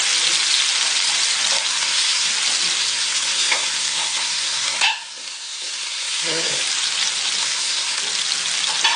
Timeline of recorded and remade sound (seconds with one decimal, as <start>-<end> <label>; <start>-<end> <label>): 0.0-1.7 recorded; 1.7-2.3 remade; 2.3-2.8 recorded; 2.8-6.6 remade; 6.6-7.4 recorded; 7.4-8.0 remade; 8.0-9.0 recorded

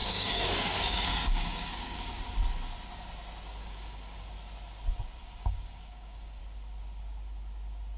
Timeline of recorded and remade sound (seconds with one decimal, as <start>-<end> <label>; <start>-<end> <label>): 0.0-2.2 remade; 2.2-3.6 recorded; 3.6-4.2 remade; 4.2-5.2 recorded; 5.2-6.4 remade; 6.4-8.0 recorded

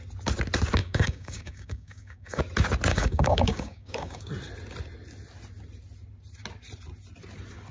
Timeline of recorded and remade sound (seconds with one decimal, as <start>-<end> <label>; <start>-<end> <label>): 0.0-0.8 recorded; 0.8-2.4 remade; 2.4-2.9 recorded; 2.9-4.3 remade; 4.3-7.7 recorded

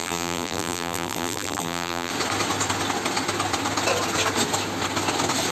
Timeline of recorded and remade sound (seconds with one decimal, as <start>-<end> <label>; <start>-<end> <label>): 0.0-2.1 remade; 2.1-5.5 recorded

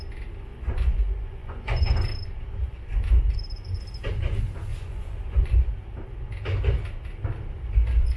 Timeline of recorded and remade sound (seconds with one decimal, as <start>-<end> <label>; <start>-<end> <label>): 0.0-0.5 recorded; 0.5-1.9 remade; 1.9-2.6 recorded; 2.6-3.4 remade; 3.4-4.7 recorded; 4.7-5.7 remade; 5.7-8.2 recorded

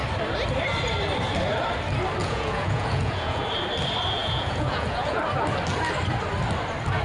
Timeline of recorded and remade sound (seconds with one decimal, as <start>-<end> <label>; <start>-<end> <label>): 0.0-2.2 recorded; 2.2-3.4 remade; 3.4-4.2 recorded; 4.2-5.2 remade; 5.2-7.0 recorded

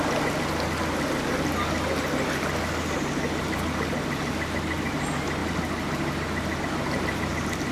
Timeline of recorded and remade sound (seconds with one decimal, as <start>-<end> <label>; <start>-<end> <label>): 0.0-7.7 recorded

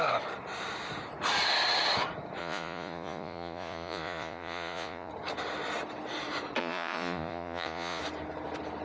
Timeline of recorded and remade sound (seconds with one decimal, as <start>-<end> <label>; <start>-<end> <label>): 0.0-2.4 recorded; 2.4-5.1 remade; 5.1-6.6 recorded; 6.6-8.0 remade; 8.0-8.8 recorded